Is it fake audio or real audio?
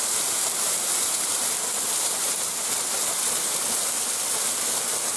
real